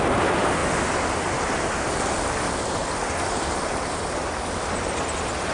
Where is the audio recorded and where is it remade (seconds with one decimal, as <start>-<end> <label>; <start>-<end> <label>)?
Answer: 0.0-5.5 recorded